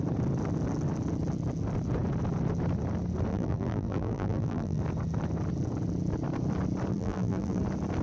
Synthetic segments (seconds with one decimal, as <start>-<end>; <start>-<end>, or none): 3.3-4.8; 6.9-7.6